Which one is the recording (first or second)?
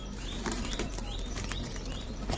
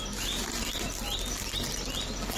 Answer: second